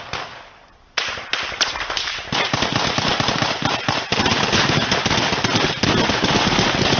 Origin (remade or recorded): recorded